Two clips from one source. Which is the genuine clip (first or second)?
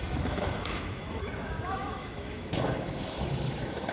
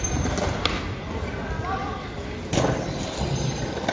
second